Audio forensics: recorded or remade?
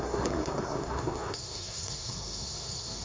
remade